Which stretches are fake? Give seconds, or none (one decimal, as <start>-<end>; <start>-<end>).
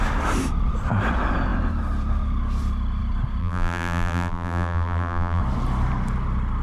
3.4-5.4